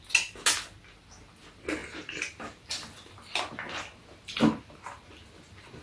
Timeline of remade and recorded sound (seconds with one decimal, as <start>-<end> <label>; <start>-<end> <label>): 0.0-5.8 recorded